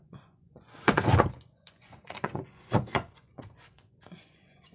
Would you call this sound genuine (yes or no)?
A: no